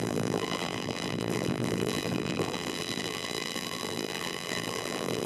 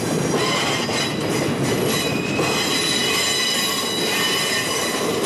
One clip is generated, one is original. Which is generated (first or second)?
first